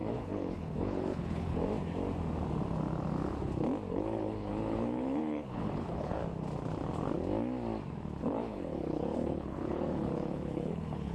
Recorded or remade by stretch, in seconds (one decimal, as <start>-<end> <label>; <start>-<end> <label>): 0.0-1.6 remade; 1.6-3.9 recorded; 3.9-6.2 remade; 6.2-8.2 recorded; 8.2-11.1 remade